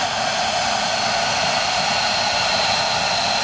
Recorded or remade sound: recorded